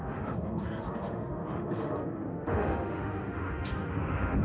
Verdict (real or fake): fake